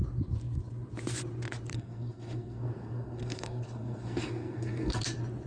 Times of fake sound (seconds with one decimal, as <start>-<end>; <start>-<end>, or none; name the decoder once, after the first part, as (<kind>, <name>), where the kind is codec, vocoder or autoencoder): 1.7-5.0 (codec, SNAC)